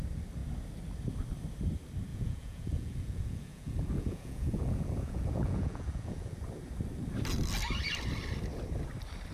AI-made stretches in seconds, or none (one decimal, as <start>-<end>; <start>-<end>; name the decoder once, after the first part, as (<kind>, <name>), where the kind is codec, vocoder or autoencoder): 2.1-6.3 (vocoder, Vocos)